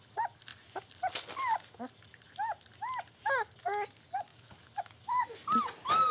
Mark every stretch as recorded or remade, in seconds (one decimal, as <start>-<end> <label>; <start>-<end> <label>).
0.0-4.3 recorded; 4.3-5.2 remade; 5.2-6.1 recorded